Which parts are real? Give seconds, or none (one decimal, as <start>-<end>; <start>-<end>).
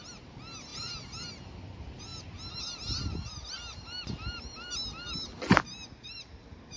0.0-6.8